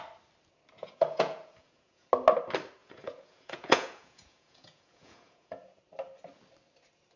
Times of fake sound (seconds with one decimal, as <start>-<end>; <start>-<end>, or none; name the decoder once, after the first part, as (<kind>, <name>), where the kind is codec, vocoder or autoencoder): 0.8-2.1 (vocoder, Vocos); 2.8-5.8